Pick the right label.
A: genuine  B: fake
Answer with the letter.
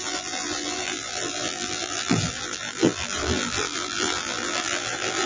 B